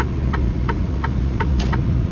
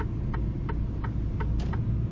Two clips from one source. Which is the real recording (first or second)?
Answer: second